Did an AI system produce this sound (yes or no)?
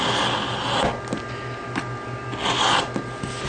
no